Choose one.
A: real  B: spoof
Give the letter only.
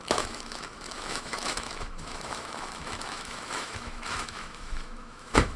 B